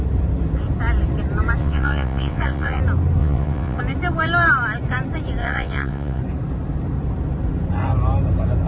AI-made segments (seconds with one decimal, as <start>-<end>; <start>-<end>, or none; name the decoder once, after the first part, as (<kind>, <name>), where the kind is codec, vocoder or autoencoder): 1.6-2.8 (vocoder, WaveNeXt); 3.2-3.8; 5.4-6.2